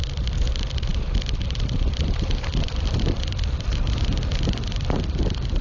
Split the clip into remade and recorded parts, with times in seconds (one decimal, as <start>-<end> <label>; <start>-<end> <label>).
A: 0.0-5.6 recorded